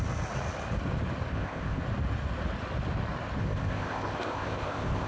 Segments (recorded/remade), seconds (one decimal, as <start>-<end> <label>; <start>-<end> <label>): 0.0-1.3 recorded; 1.3-1.8 remade; 1.8-3.4 recorded; 3.4-5.1 remade